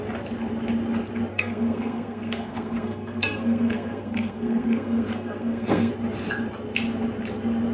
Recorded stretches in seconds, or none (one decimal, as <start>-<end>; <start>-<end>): 0.0-1.3; 5.9-7.7